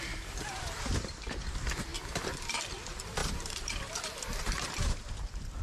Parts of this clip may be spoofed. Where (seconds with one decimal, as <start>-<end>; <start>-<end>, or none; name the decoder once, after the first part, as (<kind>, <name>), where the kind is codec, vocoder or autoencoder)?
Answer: 3.2-4.4 (vocoder, BigVGAN v2)